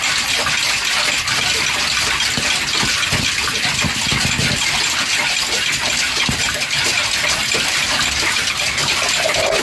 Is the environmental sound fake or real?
real